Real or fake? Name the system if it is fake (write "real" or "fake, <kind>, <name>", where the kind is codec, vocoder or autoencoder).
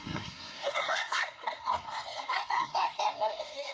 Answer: fake, codec, SNAC